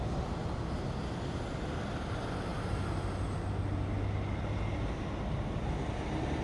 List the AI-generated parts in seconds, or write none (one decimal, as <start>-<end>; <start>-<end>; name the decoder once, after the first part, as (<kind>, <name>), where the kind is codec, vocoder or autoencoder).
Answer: none

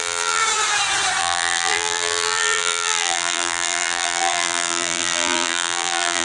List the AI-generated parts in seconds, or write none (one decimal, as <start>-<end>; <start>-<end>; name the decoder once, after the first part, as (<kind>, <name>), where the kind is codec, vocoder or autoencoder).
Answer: 0.0-0.4 (vocoder, BigVGAN v2); 1.2-6.2

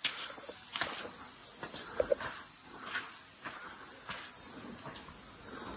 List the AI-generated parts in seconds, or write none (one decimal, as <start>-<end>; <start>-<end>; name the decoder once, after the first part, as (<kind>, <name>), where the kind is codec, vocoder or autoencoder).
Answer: none

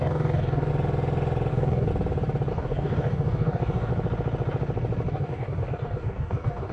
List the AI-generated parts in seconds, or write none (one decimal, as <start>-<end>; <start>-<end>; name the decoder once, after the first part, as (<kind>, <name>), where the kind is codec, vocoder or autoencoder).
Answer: 0.0-0.7 (codec, DAC); 1.5-1.9; 2.5-3.9; 5.1-6.7

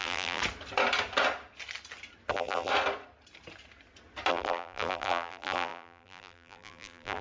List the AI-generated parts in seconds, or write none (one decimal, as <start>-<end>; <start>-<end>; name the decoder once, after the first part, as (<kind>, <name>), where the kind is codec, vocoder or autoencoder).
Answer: 0.0-0.4 (vocoder, BigVGAN v2); 2.3-2.7; 4.3-7.2

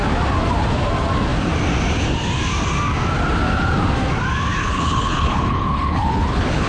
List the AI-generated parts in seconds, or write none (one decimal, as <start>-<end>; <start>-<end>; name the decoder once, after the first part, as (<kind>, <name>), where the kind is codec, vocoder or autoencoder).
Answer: 4.6-6.7 (codec, HILCodec)

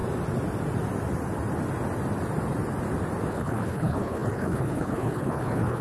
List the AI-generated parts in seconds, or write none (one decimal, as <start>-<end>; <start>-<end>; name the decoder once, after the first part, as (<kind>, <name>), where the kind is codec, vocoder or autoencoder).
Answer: 3.3-5.8 (codec, HILCodec)

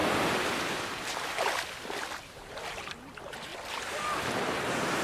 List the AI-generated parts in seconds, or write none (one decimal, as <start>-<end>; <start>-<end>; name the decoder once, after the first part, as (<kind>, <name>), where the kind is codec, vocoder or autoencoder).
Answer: 2.2-3.5 (vocoder, BigVGAN v2); 4.3-5.0